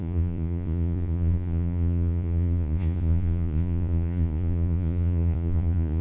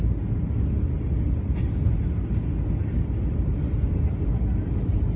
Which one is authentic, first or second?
second